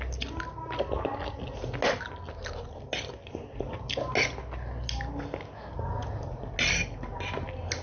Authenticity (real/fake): real